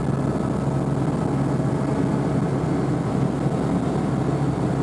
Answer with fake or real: real